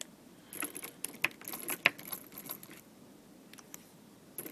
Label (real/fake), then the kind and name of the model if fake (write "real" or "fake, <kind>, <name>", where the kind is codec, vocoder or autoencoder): real